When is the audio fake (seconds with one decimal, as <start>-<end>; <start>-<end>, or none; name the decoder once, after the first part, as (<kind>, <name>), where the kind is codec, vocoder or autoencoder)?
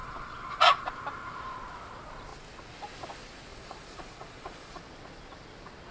0.0-0.9 (vocoder, Vocos); 3.5-4.8